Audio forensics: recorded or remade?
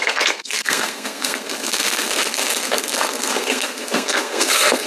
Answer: remade